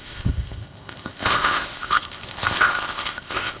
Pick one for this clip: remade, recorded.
remade